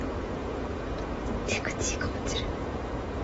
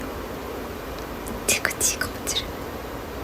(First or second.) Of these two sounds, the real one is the second